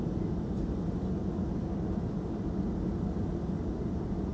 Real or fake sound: real